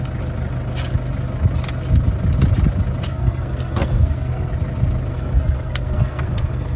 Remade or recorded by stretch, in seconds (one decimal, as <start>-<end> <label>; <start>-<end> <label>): 0.0-3.1 recorded; 3.1-4.5 remade; 4.5-5.1 recorded; 5.1-6.8 remade